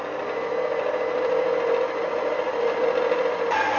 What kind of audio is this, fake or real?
real